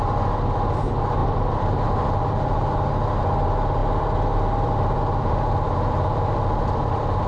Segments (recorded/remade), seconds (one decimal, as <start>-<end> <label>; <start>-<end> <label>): 0.0-1.2 recorded; 1.2-2.4 remade; 2.4-3.8 recorded; 3.8-7.3 remade